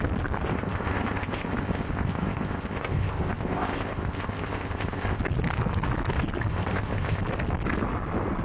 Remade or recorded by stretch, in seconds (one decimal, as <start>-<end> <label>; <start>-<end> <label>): 0.0-0.5 recorded; 0.5-5.2 remade; 5.2-6.5 recorded; 6.5-7.2 remade; 7.2-8.4 recorded